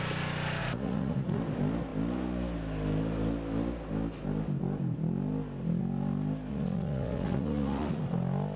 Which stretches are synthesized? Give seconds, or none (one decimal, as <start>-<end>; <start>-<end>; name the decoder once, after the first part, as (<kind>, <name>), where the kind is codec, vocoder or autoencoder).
0.6-1.4 (vocoder, Vocos); 6.5-8.0